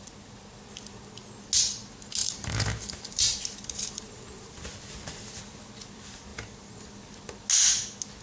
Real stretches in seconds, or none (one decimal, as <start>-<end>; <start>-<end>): 0.0-2.2; 4.9-6.3; 6.8-8.2